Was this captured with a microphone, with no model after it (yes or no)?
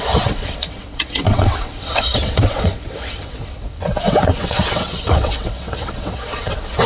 no